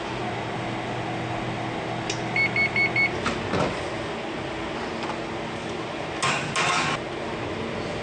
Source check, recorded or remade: recorded